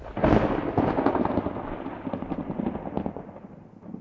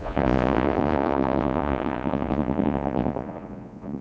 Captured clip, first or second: first